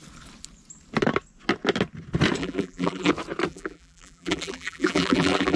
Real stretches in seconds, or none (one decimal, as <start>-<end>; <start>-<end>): 0.0-2.4; 3.1-3.5